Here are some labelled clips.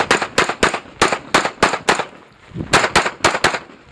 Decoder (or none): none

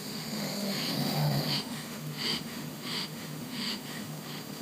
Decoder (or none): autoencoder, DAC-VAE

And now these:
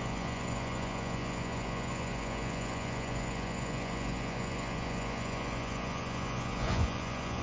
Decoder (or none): vocoder, Vocos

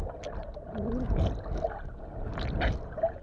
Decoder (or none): none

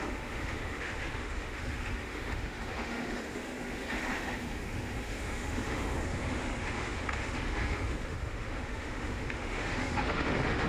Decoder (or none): autoencoder, DAC-VAE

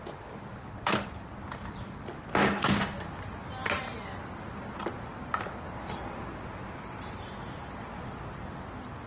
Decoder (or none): none